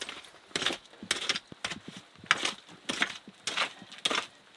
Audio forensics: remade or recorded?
recorded